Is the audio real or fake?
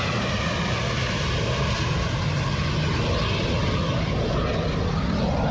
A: real